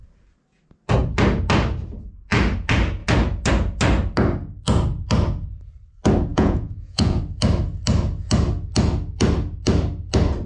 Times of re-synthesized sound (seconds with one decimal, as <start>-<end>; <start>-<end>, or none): 6.3-7.2